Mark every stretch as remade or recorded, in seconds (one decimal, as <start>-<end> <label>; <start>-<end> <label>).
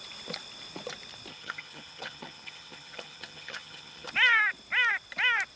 0.0-1.3 recorded; 1.3-4.1 remade; 4.1-5.6 recorded